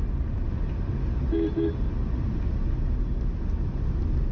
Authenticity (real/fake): real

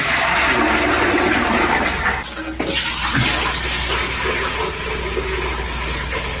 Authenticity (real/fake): real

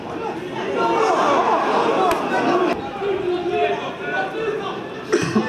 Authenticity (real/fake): real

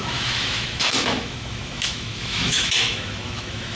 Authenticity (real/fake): fake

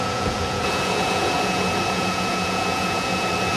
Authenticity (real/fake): fake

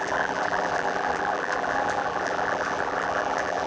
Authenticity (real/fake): fake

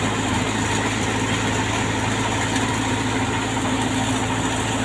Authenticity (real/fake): real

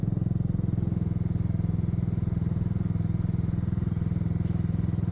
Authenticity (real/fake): real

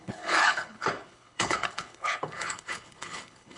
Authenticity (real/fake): fake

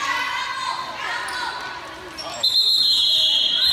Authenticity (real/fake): real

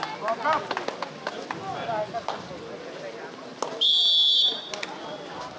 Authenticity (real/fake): real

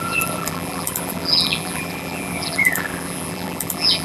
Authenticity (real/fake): fake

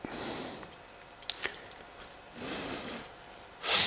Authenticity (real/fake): real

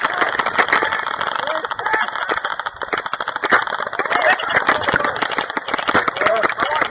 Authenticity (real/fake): real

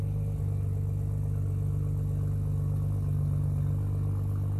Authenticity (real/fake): real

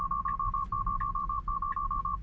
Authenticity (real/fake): real